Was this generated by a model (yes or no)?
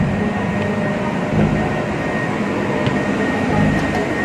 no